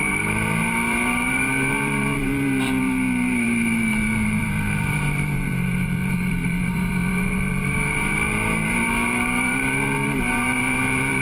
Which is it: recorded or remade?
remade